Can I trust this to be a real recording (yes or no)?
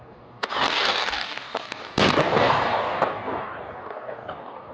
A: no